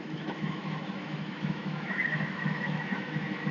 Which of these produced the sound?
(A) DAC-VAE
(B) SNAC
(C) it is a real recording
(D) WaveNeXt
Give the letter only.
A